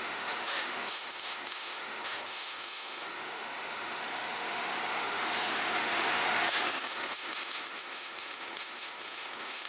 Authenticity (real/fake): fake